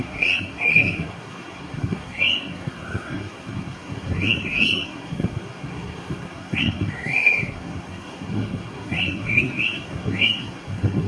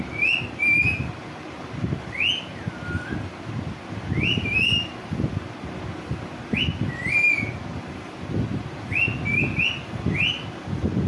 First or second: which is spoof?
first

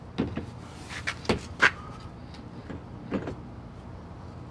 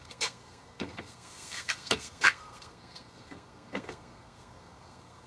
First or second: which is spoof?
second